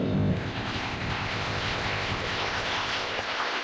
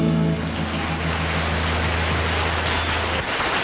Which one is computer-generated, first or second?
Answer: first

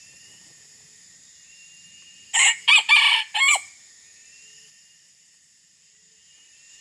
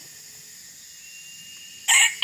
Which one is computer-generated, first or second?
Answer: first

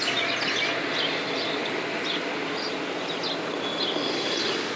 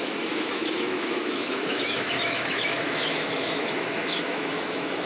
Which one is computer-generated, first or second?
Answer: second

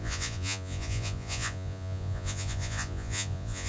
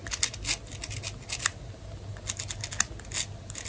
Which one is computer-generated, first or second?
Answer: first